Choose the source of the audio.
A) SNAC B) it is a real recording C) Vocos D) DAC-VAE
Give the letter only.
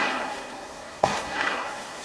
A